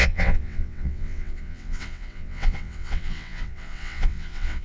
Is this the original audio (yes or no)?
no